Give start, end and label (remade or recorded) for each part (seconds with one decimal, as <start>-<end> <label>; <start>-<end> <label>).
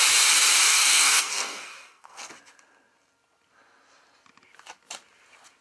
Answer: 0.0-0.7 recorded; 0.7-2.3 remade; 2.3-5.6 recorded